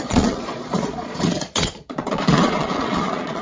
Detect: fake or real fake